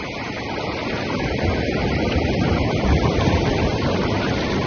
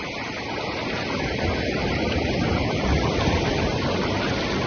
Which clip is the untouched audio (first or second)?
second